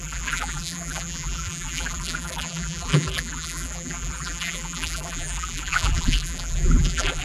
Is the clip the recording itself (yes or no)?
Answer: no